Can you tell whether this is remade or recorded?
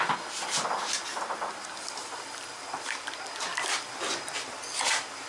recorded